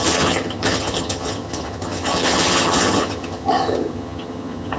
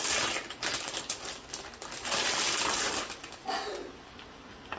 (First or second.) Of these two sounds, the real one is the second